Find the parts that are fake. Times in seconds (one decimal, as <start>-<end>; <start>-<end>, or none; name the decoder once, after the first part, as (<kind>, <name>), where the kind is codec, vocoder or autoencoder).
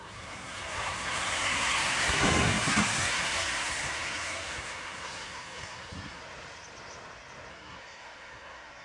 0.0-6.2 (codec, SNAC); 7.5-8.8